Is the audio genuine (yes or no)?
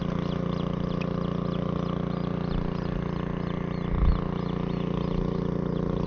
yes